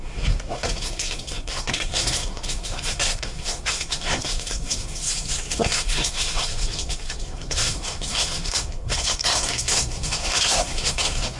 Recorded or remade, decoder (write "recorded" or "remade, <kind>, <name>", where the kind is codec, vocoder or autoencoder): remade, codec, SNAC